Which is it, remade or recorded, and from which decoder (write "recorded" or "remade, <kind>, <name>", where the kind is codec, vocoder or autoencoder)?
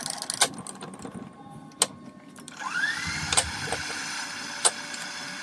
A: recorded